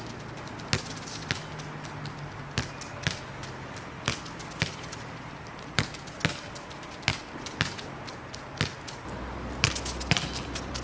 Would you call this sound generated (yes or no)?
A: no